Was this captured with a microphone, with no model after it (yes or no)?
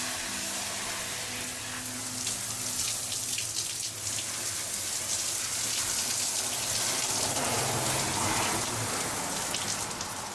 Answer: yes